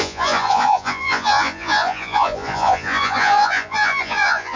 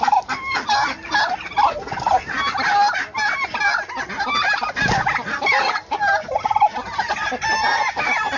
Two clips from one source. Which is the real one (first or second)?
second